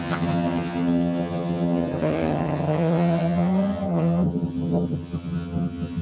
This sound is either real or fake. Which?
fake